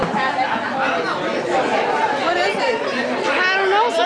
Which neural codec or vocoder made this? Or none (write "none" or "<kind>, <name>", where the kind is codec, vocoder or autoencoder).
none